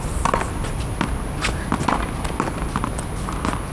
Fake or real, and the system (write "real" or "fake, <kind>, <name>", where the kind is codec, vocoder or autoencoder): real